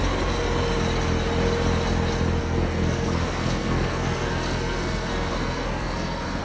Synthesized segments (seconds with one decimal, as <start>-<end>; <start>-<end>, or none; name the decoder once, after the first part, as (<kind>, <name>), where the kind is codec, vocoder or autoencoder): 2.4-6.4 (codec, SNAC)